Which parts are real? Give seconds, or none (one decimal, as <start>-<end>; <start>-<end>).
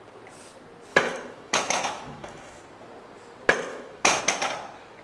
0.0-0.9; 2.6-3.7; 4.2-5.0